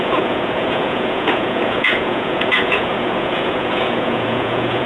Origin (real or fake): fake